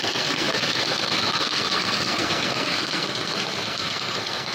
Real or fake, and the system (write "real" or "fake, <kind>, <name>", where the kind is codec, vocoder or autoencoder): fake, codec, SNAC